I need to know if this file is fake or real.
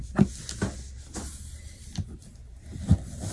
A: real